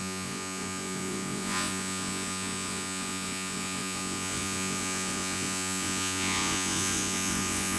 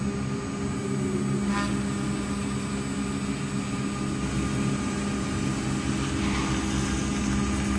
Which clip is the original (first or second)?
second